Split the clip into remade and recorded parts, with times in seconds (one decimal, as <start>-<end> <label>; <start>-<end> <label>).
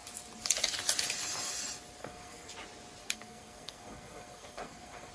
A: 0.0-2.0 recorded; 2.0-2.5 remade; 2.5-3.0 recorded; 3.0-5.1 remade